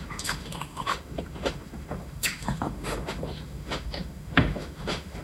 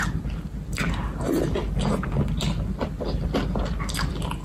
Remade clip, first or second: first